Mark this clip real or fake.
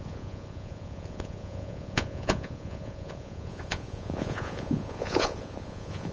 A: fake